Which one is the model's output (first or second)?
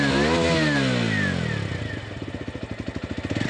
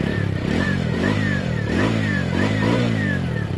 second